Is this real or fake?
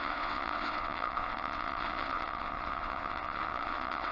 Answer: fake